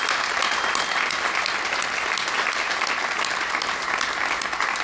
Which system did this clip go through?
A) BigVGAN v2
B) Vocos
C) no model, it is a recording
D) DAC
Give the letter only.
C